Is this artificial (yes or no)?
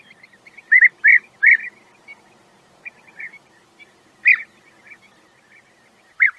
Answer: yes